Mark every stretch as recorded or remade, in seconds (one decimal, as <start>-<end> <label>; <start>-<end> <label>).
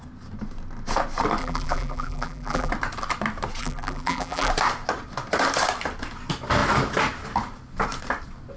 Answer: 0.0-1.4 recorded; 1.4-2.7 remade; 2.7-3.6 recorded; 3.6-4.5 remade; 4.5-8.6 recorded